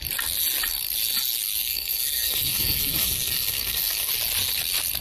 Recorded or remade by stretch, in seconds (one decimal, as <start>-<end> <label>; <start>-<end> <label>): 0.0-1.6 recorded; 1.6-4.1 remade; 4.1-5.0 recorded